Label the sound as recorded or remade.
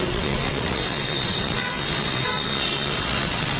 remade